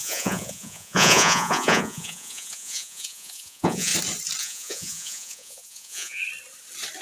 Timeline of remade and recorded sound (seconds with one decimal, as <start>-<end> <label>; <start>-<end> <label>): 0.0-3.9 remade; 3.9-4.4 recorded; 4.4-6.2 remade; 6.2-7.0 recorded